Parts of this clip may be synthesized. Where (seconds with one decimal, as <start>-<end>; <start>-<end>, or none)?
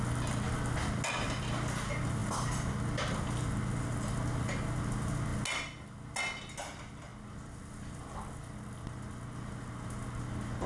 none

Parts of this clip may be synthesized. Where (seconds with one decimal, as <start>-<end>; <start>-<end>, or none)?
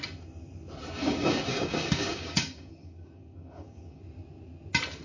1.0-4.0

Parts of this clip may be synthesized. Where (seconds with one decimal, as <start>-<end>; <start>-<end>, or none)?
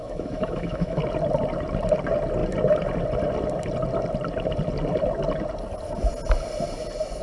0.0-1.0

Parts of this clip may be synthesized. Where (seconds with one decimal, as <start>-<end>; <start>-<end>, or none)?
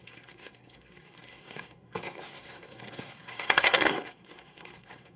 0.0-5.2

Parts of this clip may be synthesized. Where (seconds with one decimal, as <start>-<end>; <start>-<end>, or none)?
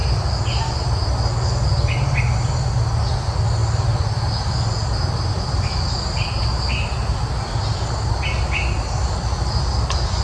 none